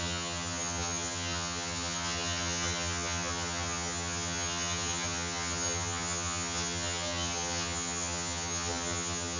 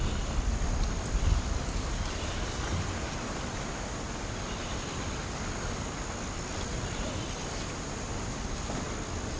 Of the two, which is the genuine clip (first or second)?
second